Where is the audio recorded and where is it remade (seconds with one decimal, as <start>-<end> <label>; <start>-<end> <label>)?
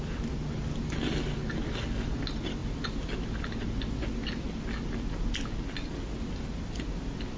0.0-7.4 recorded